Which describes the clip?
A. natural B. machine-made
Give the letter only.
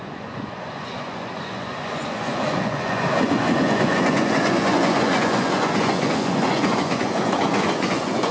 B